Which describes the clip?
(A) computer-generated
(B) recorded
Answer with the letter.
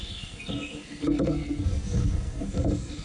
A